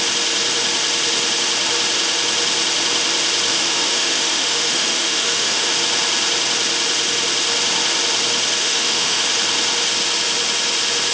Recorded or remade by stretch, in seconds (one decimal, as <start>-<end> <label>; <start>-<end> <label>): 0.0-3.5 recorded; 3.5-5.8 remade; 5.8-8.6 recorded; 8.6-9.2 remade; 9.2-11.1 recorded